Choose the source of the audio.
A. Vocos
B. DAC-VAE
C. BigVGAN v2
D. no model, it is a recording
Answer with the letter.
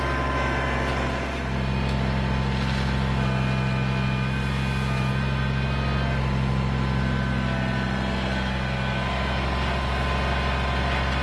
D